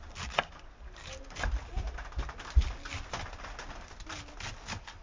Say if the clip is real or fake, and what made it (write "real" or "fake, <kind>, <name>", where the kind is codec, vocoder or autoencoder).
real